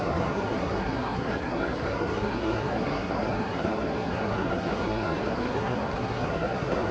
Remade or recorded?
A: remade